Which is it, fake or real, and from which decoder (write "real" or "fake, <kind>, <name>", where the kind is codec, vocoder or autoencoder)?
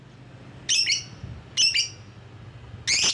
real